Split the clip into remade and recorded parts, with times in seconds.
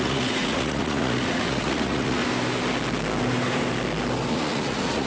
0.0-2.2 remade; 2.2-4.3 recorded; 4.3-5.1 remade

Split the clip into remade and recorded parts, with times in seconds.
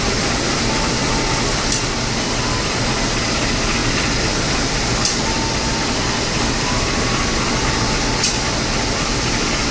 0.0-9.7 recorded